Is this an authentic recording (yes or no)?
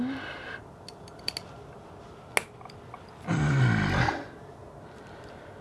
yes